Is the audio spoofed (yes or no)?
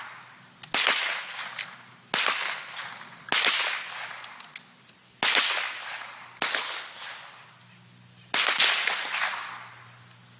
no